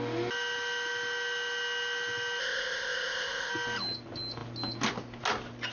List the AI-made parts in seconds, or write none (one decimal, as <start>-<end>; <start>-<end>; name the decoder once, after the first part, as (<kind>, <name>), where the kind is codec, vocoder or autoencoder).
2.4-3.5 (codec, ZipCodec)